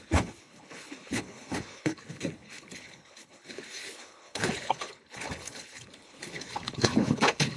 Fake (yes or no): yes